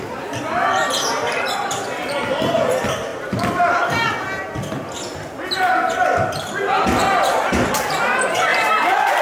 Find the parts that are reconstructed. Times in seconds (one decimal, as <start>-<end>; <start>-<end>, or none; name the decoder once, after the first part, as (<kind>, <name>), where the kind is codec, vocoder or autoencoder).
0.0-3.1 (vocoder, BigVGAN v2); 7.7-9.2